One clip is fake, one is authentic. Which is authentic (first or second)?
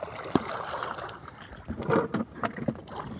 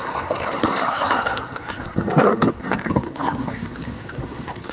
first